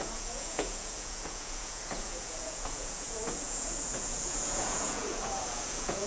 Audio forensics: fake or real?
fake